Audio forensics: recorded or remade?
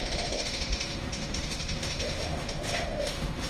remade